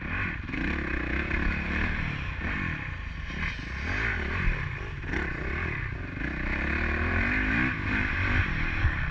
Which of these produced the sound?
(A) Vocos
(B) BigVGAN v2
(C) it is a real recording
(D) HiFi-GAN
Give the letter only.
C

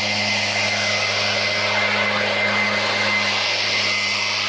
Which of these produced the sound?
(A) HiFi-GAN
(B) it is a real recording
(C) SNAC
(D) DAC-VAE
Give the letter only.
B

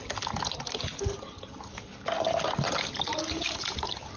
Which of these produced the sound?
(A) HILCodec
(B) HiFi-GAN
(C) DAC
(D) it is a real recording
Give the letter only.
D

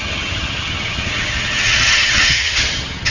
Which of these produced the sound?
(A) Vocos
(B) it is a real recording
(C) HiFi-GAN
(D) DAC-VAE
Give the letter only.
C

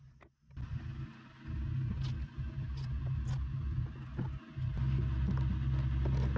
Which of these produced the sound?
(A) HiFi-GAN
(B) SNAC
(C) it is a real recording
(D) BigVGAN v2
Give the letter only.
C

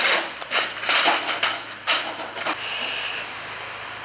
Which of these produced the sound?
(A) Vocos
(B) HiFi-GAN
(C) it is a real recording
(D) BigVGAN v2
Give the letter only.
C